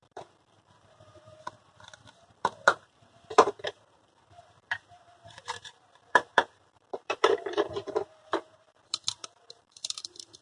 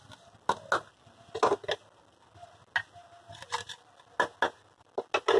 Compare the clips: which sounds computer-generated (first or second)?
first